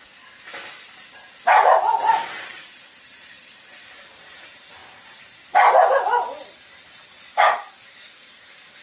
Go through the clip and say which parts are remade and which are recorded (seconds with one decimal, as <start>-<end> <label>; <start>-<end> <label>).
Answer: 0.0-7.3 recorded; 7.3-8.8 remade